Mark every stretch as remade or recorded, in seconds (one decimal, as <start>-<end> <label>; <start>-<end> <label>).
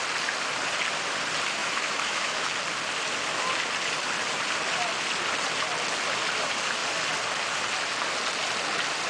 0.0-1.6 recorded; 1.6-2.5 remade; 2.5-9.1 recorded